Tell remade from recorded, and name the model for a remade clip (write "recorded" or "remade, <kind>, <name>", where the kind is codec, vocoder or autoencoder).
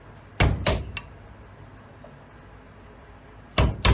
recorded